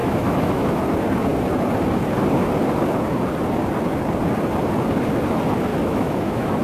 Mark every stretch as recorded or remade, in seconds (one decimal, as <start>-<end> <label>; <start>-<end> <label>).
0.0-0.8 remade; 0.8-5.7 recorded; 5.7-6.6 remade